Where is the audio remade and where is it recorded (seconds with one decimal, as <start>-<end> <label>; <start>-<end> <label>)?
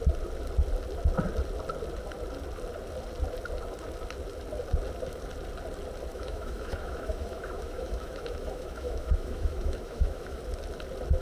0.0-6.1 recorded; 6.1-10.4 remade; 10.4-11.2 recorded